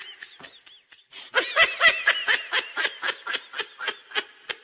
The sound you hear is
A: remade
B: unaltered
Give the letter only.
B